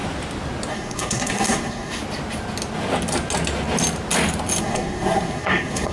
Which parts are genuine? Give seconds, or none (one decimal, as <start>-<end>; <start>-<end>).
0.0-0.7; 2.0-4.6